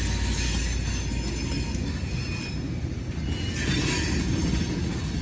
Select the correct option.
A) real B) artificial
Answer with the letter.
A